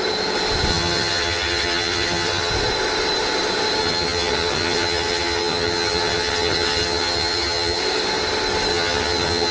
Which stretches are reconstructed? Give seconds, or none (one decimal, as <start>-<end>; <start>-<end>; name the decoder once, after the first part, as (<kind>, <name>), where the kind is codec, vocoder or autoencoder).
0.7-2.5 (vocoder, HiFi-GAN); 3.8-7.8; 8.7-9.5